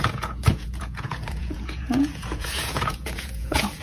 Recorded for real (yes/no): no